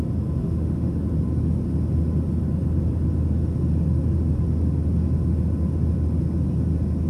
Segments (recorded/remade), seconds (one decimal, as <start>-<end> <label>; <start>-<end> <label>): 0.0-0.4 recorded; 0.4-1.0 remade; 1.0-7.1 recorded